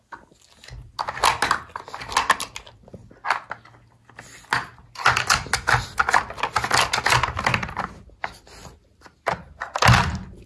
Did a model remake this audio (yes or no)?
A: no